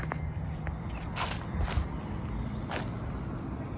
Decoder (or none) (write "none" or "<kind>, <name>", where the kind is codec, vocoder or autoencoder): none